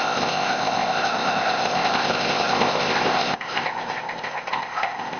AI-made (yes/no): yes